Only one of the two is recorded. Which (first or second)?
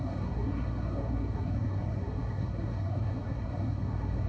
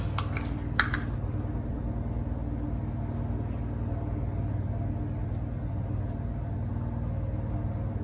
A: second